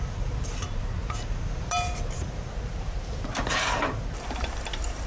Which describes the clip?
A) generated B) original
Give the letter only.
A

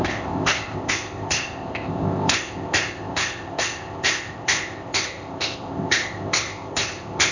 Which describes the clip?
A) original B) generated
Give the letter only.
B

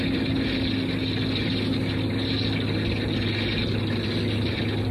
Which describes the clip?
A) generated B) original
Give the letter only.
B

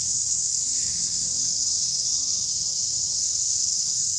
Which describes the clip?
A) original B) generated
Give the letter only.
B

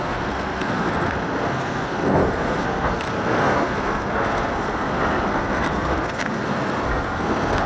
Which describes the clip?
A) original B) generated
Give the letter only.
B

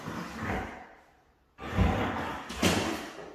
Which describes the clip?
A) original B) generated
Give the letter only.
A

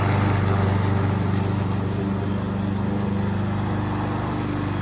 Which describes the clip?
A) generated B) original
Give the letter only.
B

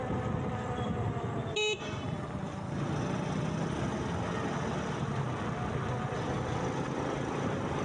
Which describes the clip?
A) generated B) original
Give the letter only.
B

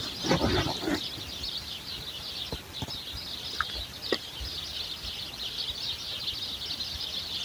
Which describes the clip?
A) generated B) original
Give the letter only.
B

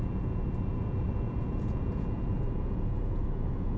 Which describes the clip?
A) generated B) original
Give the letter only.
A